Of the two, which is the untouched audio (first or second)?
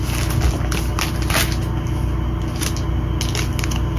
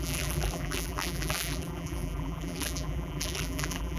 first